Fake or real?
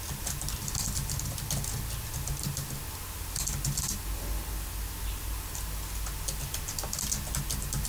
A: real